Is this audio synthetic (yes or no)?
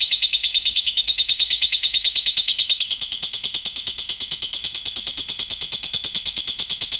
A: yes